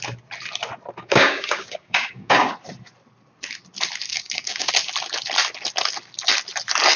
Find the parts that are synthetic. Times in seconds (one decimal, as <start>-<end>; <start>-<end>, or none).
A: 1.0-2.5; 4.1-4.7